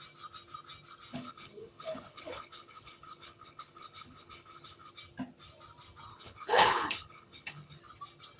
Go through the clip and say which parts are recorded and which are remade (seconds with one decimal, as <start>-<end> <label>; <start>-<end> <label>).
0.0-1.1 recorded; 1.1-4.9 remade; 4.9-6.1 recorded; 6.1-7.8 remade; 7.8-8.4 recorded